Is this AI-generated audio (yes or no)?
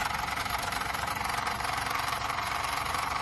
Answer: yes